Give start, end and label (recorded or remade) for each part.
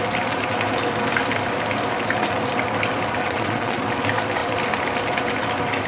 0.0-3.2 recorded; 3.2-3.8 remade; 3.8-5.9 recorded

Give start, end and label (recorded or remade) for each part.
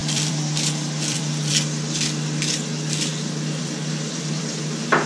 0.0-1.5 remade; 1.5-3.1 recorded; 3.1-4.6 remade; 4.6-5.1 recorded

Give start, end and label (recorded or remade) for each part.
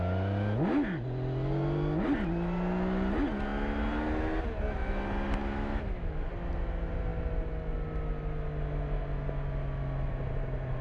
0.0-5.4 recorded; 5.4-6.3 remade; 6.3-10.8 recorded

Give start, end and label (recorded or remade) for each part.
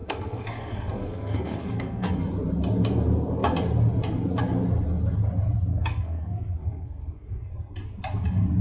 0.0-2.2 remade; 2.2-5.7 recorded; 5.7-7.5 remade; 7.5-8.6 recorded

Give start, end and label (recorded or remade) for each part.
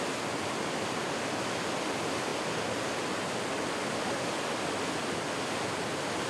0.0-6.3 recorded